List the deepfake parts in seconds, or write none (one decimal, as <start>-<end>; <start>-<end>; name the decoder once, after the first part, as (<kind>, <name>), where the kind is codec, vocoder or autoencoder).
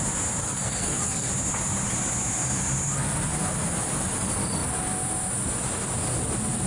0.4-1.3 (codec, SNAC)